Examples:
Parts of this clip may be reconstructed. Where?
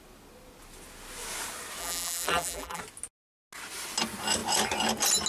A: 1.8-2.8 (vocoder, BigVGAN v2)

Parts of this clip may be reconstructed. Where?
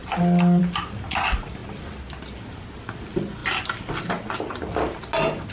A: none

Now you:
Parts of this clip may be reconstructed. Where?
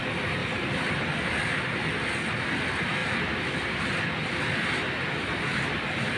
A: 0.4-0.9 (vocoder, BigVGAN v2)